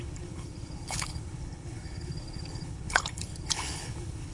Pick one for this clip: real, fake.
fake